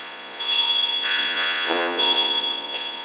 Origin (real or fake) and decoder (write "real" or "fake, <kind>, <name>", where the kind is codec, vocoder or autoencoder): fake, vocoder, Vocos